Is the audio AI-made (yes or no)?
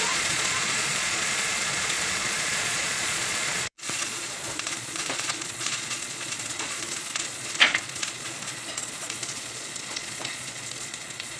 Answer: yes